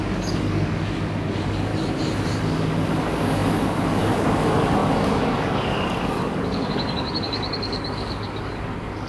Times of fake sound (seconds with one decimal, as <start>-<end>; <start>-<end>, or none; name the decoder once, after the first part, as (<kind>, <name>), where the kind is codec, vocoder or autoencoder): 0.0-1.7 (codec, DAC); 2.4-9.1